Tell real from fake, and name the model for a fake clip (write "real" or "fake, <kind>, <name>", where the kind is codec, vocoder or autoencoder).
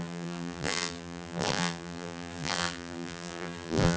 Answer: fake, vocoder, BigVGAN v2